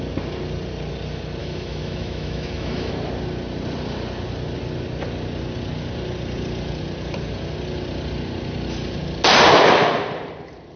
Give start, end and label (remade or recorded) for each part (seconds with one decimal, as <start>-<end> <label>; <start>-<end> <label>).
0.0-1.4 recorded; 1.4-2.9 remade; 2.9-10.8 recorded